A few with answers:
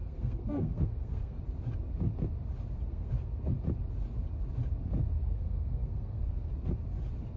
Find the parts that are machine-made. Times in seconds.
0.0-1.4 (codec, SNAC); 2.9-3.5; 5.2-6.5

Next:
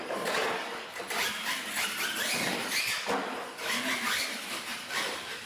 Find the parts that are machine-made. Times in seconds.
4.7-5.5 (vocoder, BigVGAN v2)

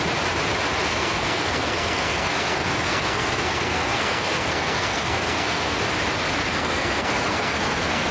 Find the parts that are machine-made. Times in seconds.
0.9-5.8 (codec, SNAC); 6.4-8.1

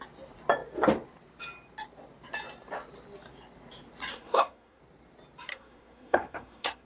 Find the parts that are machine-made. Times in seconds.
4.1-4.8 (codec, SNAC); 5.5-6.9